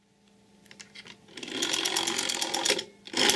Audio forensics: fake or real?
real